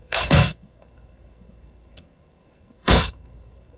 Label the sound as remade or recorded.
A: remade